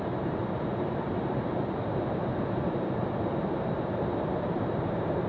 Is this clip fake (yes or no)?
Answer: yes